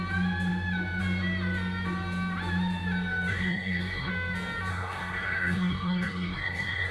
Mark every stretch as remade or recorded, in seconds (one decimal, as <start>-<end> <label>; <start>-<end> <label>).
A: 0.0-3.3 recorded; 3.3-4.1 remade; 4.1-4.7 recorded; 4.7-6.9 remade